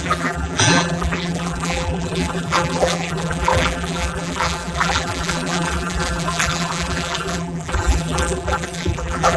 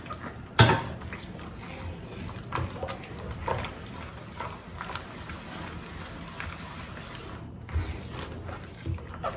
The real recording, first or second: second